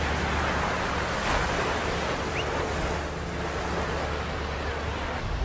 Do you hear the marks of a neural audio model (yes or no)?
no